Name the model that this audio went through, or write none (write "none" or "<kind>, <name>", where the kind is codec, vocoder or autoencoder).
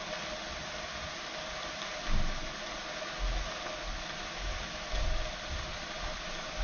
none